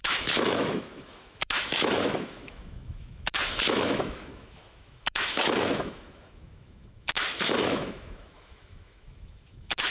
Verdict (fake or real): fake